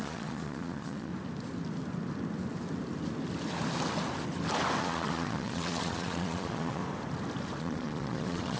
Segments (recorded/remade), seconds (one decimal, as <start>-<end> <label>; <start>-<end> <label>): 0.0-1.1 remade; 1.1-4.8 recorded; 4.8-6.8 remade; 6.8-7.6 recorded; 7.6-8.6 remade

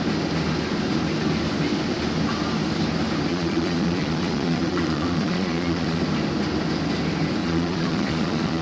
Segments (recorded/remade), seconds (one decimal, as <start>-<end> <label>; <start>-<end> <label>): 0.0-3.3 recorded; 3.3-6.0 remade; 6.0-7.4 recorded; 7.4-8.6 remade

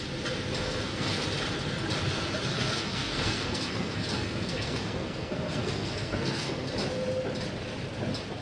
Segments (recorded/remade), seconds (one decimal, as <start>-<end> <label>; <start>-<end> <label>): 0.0-0.6 recorded; 0.6-1.2 remade; 1.2-2.5 recorded; 2.5-6.7 remade; 6.7-8.4 recorded

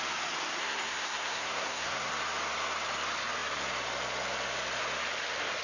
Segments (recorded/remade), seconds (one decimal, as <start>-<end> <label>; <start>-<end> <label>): 0.0-0.6 recorded; 0.6-2.1 remade; 2.1-5.6 recorded

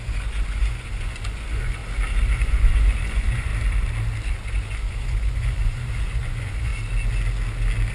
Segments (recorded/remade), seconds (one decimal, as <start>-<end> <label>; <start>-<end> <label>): 0.0-1.8 remade; 1.8-2.3 recorded; 2.3-3.5 remade; 3.5-4.3 recorded; 4.3-6.7 remade; 6.7-7.9 recorded

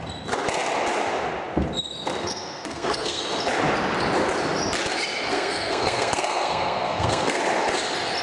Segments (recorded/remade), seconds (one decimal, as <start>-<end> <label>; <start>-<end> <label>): 0.0-2.2 recorded; 2.2-3.2 remade; 3.2-5.3 recorded; 5.3-7.4 remade; 7.4-8.2 recorded

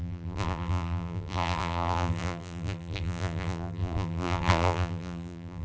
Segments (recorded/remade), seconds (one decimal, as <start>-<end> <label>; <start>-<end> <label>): 0.0-5.6 remade